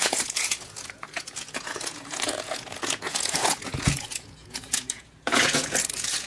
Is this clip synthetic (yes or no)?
yes